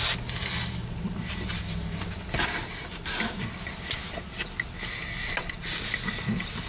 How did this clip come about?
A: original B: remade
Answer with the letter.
A